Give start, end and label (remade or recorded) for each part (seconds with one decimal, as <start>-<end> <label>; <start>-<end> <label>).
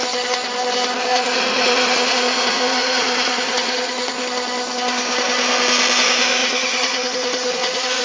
0.0-1.1 recorded; 1.1-4.2 remade; 4.2-6.4 recorded; 6.4-8.0 remade